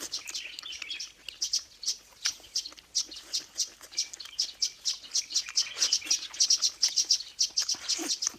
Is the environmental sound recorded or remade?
recorded